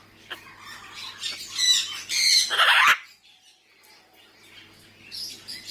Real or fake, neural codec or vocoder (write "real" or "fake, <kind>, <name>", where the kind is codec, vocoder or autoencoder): real